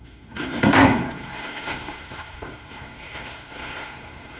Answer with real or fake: fake